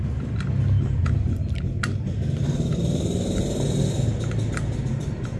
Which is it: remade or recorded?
recorded